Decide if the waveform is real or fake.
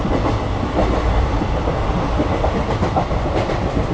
real